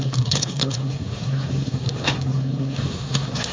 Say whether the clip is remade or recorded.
remade